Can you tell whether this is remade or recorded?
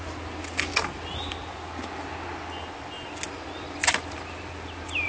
recorded